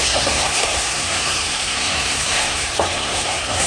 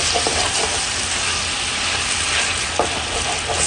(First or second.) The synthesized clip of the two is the first